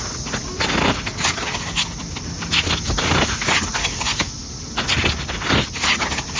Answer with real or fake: real